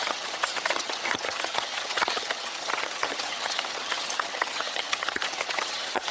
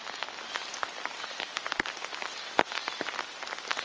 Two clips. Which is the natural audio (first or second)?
second